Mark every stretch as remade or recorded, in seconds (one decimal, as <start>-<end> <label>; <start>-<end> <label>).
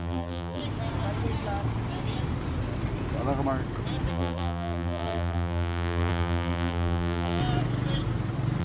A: 0.0-0.6 remade; 0.6-4.1 recorded; 4.1-7.4 remade; 7.4-8.6 recorded